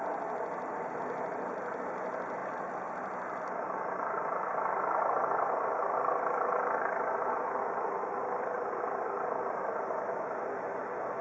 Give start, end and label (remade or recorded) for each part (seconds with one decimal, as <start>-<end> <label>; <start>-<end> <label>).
0.0-11.2 recorded